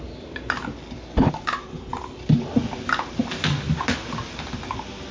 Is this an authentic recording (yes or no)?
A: yes